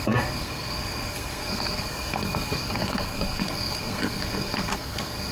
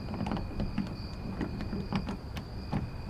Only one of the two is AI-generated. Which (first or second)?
first